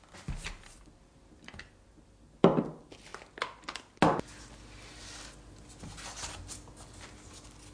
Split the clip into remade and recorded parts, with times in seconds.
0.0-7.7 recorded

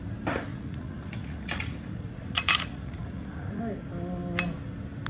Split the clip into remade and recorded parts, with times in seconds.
0.0-0.5 recorded; 0.5-3.6 remade; 3.6-5.1 recorded